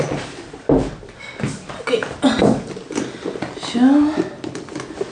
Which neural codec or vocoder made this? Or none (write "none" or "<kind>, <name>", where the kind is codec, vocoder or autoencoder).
none